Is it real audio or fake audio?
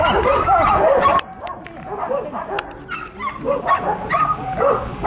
real